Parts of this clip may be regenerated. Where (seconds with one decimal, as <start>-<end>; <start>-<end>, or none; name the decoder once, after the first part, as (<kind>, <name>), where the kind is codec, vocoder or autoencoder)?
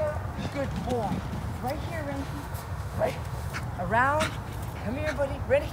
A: 2.2-3.5 (autoencoder, DAC-VAE)